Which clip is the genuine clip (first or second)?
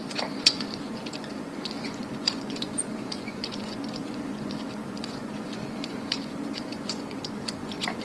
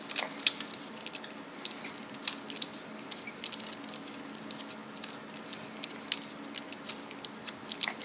second